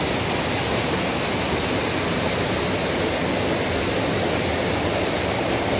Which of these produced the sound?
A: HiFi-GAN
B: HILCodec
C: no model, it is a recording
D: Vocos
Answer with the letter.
C